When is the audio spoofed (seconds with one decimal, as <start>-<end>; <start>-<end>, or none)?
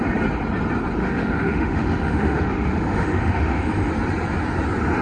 1.0-3.9